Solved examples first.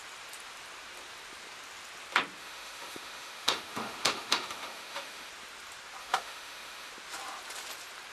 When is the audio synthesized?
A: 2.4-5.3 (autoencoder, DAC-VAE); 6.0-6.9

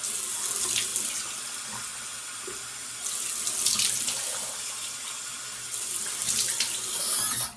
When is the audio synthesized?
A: none